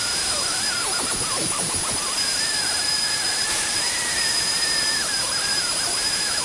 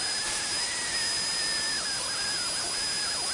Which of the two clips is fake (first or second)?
first